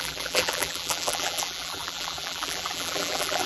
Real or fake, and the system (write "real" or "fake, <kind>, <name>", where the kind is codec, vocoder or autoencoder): fake, vocoder, BigVGAN v2